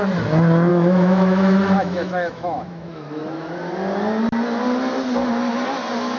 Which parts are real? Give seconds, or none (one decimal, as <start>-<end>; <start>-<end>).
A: 0.0-0.7; 3.6-6.2